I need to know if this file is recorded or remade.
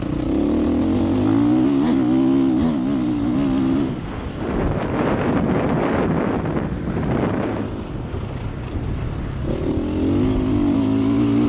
recorded